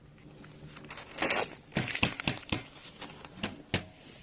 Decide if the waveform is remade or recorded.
recorded